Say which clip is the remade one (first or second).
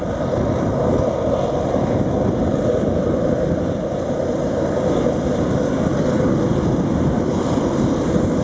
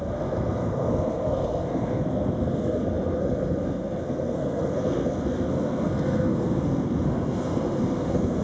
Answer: second